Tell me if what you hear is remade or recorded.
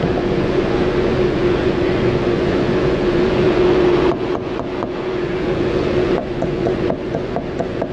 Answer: remade